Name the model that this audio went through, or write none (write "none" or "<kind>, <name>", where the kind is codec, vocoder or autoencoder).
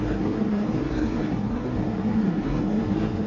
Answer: codec, SNAC